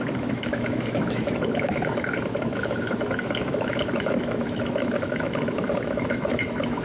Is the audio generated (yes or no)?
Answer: yes